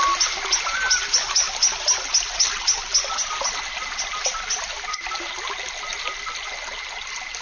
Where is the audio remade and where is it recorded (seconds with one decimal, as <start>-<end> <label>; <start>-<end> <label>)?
0.0-7.4 recorded